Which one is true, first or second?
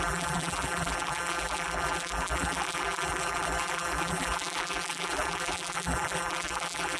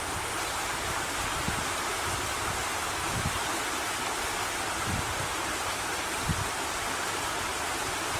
second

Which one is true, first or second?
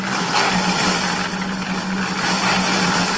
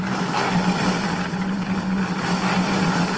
first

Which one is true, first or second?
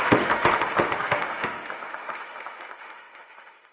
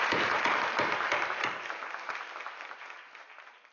second